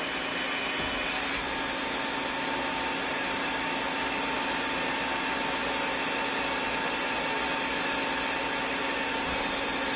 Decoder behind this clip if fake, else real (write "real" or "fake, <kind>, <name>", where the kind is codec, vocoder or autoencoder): real